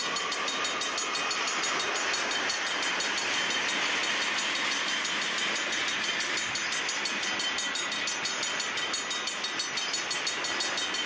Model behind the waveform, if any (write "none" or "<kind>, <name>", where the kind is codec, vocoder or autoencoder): none